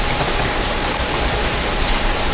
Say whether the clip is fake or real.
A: fake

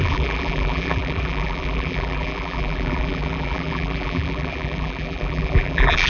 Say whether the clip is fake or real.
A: fake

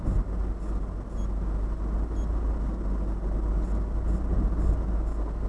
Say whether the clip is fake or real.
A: real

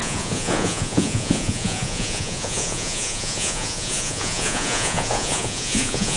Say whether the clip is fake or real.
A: fake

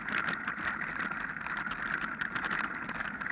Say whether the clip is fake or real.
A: real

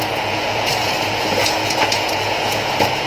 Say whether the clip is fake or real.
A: fake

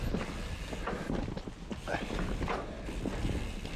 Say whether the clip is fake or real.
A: real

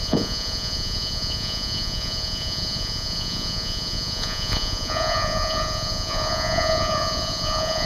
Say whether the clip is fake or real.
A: fake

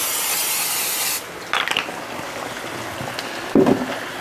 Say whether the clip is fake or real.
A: real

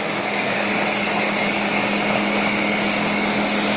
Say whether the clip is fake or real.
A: fake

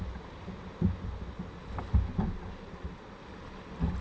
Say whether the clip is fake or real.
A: real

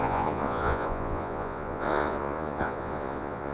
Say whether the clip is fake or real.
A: fake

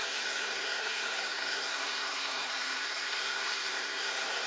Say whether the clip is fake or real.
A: fake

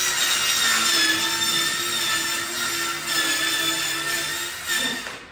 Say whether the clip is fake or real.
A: real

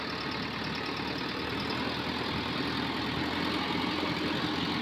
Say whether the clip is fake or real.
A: real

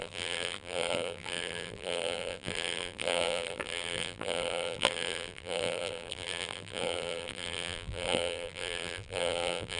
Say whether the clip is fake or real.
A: fake